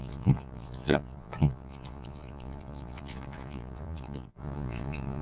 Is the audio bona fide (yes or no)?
no